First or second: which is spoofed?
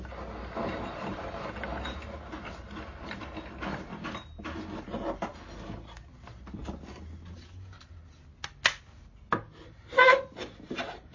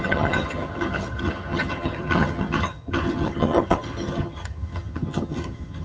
second